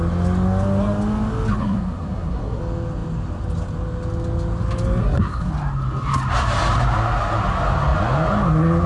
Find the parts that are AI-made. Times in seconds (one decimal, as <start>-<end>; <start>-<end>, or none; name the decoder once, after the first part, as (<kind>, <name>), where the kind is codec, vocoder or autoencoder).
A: 1.6-2.6 (codec, SNAC); 5.0-5.5